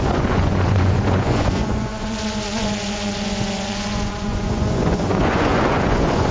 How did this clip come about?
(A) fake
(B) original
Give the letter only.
A